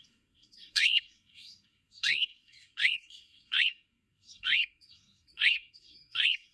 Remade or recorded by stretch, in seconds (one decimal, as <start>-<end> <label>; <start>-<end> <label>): 0.0-6.5 remade